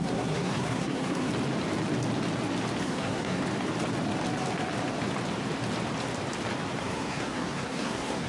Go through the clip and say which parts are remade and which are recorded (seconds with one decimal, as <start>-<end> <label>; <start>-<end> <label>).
0.0-1.3 remade; 1.3-2.8 recorded; 2.8-3.4 remade; 3.4-6.8 recorded; 6.8-8.3 remade